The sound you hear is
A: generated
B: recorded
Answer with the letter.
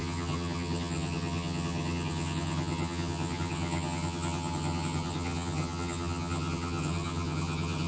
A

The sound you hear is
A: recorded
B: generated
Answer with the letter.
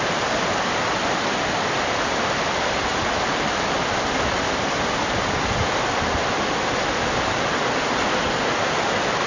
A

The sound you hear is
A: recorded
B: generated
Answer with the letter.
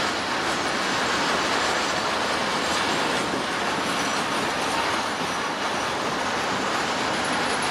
A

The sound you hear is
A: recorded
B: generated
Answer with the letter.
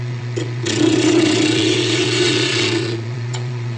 B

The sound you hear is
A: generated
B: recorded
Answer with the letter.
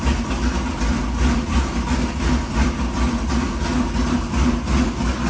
B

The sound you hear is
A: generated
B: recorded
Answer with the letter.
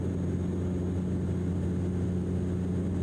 B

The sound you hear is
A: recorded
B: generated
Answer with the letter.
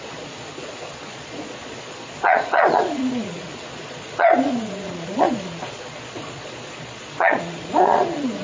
B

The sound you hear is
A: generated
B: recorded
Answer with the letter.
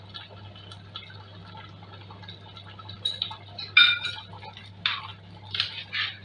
B